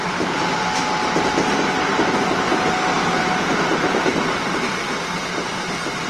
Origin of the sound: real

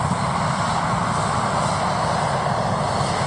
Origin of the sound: real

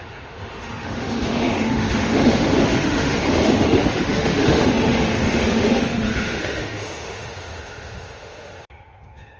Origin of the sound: fake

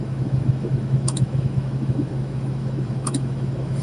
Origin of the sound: fake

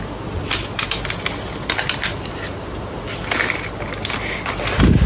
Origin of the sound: real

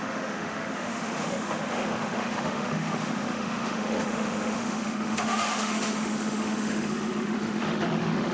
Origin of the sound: fake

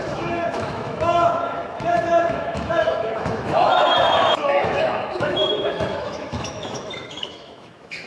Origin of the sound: fake